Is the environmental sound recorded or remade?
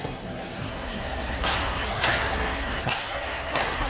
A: remade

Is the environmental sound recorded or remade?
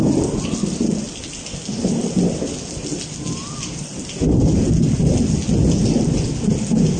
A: recorded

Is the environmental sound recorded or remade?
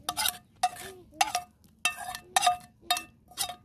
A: recorded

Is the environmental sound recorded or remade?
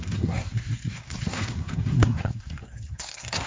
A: remade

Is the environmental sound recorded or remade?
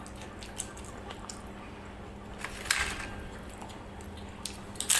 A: recorded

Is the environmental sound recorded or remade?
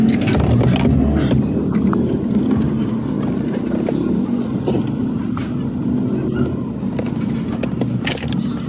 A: recorded